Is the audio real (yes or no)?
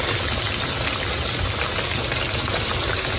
yes